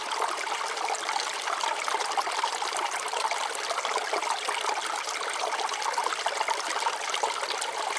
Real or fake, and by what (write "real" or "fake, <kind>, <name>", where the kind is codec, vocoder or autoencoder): real